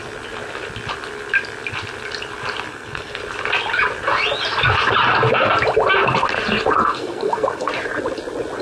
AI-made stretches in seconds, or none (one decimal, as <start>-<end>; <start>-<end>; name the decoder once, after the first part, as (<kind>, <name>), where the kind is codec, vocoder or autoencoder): 2.7-3.2 (codec, SNAC); 6.8-7.7